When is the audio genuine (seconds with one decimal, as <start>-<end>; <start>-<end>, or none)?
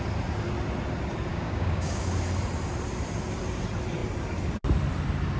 0.0-1.3; 2.0-5.4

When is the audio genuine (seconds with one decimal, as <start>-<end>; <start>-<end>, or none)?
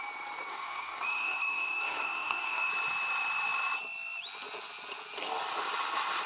0.0-0.5; 2.7-6.3